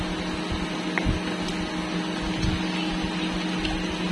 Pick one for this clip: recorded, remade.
recorded